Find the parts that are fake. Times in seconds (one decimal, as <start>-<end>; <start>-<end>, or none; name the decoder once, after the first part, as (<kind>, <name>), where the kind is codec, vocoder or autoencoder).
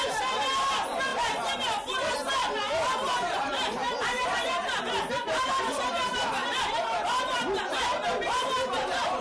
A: none